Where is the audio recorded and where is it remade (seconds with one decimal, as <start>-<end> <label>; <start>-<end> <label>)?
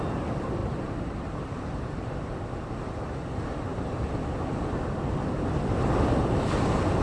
0.0-0.6 recorded; 0.6-2.7 remade; 2.7-7.0 recorded